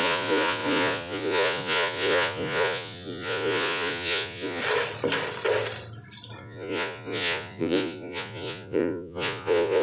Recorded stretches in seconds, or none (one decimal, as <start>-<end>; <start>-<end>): 4.6-6.4